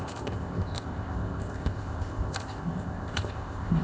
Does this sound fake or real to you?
fake